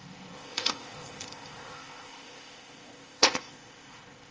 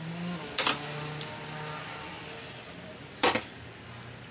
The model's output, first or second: first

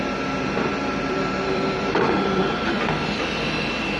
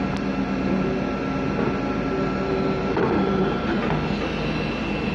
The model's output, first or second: first